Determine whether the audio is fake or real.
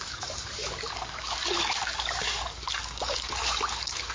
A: fake